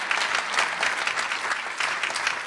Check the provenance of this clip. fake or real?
real